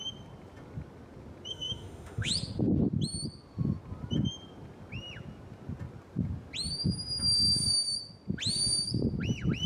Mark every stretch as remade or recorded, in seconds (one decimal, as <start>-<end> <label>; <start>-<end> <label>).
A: 0.0-1.5 recorded; 1.5-2.3 remade; 2.3-9.7 recorded